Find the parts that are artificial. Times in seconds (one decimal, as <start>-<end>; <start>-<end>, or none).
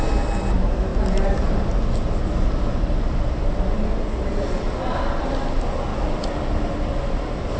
5.9-6.8